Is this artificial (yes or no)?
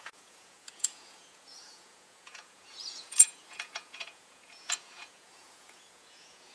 yes